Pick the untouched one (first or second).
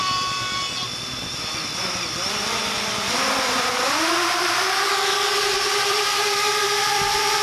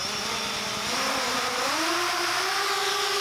second